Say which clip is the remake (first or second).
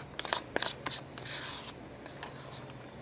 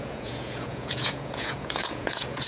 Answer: second